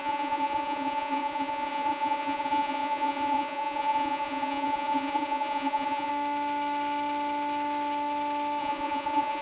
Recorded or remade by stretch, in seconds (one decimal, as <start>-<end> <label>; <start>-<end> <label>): 0.0-6.1 remade; 6.1-8.6 recorded; 8.6-9.4 remade

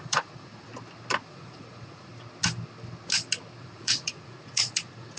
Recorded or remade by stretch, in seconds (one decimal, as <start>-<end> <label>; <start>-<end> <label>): 0.0-0.7 remade; 0.7-1.3 recorded; 1.3-2.1 remade; 2.1-3.6 recorded; 3.6-5.2 remade

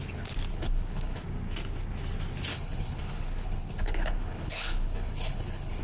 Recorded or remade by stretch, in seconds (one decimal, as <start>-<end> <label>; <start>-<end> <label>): 0.0-0.5 recorded; 0.5-1.2 remade; 1.2-2.5 recorded; 2.5-5.8 remade

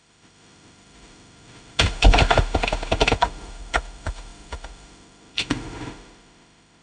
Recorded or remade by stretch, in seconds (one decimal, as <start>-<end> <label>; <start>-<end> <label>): 0.0-6.8 remade

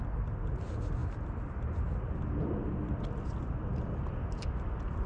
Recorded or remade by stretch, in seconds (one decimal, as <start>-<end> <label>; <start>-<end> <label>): 0.0-5.1 recorded

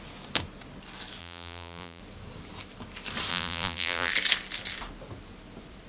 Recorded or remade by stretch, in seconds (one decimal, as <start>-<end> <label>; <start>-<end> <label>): 0.0-1.2 recorded; 1.2-2.0 remade; 2.0-3.3 recorded; 3.3-4.1 remade; 4.1-5.9 recorded

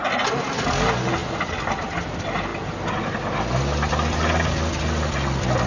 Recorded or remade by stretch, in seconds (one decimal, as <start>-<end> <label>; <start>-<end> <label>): 0.0-5.7 recorded

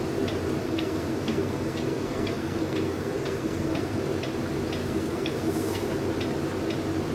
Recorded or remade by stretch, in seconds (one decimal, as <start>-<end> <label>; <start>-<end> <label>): 0.0-0.6 recorded; 0.6-4.0 remade; 4.0-4.8 recorded; 4.8-6.0 remade; 6.0-7.1 recorded